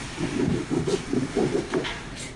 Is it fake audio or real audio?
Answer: real